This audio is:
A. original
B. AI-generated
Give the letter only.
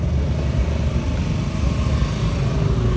A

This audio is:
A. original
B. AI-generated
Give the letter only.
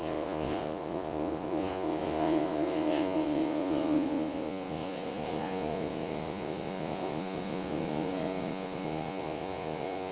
B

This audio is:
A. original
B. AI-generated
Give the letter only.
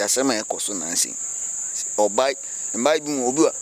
A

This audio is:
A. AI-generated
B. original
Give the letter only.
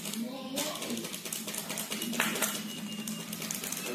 B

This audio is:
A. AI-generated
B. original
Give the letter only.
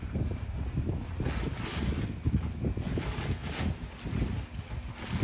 B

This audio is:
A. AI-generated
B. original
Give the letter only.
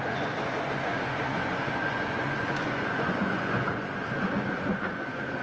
A